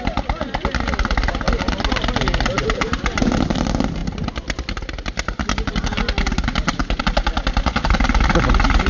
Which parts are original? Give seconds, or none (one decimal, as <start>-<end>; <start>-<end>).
0.0-8.9